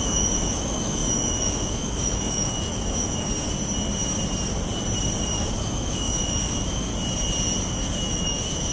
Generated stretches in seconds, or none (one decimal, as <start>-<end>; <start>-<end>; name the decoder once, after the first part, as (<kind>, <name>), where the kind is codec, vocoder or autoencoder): 0.0-3.3 (autoencoder, DAC-VAE); 5.3-6.9; 7.7-8.7